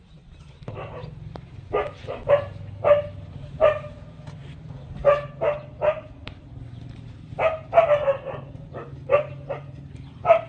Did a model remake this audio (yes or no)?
no